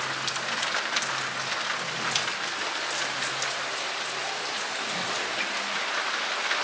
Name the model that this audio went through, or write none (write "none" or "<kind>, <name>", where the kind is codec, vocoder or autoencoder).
none